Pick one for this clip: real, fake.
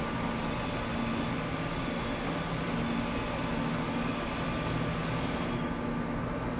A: real